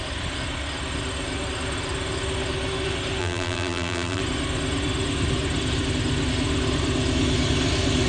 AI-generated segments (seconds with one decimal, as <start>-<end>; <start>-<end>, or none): 3.2-4.2